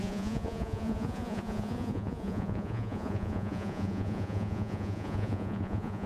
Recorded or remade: remade